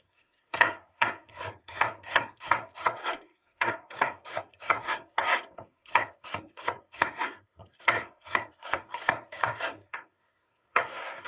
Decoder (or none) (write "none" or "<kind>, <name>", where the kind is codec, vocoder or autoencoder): codec, SNAC